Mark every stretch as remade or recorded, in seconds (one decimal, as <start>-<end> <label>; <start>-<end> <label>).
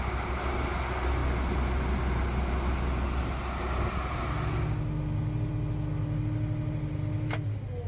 0.0-7.9 recorded